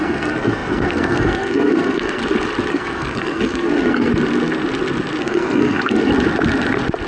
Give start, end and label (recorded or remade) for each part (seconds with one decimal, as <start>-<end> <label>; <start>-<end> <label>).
0.0-2.2 remade; 2.2-2.7 recorded; 2.7-4.1 remade; 4.1-5.2 recorded; 5.2-6.1 remade; 6.1-7.1 recorded